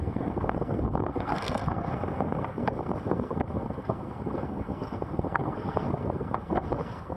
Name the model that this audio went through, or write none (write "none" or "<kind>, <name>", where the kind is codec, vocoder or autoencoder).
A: codec, SNAC